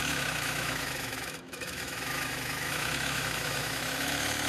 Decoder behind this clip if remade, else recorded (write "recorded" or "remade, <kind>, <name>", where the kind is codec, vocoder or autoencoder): remade, autoencoder, DAC-VAE